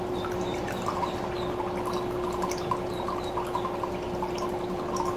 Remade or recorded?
recorded